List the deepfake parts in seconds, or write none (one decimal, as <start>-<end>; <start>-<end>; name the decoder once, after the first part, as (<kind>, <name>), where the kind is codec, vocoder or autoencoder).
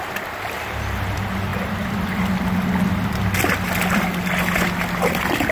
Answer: none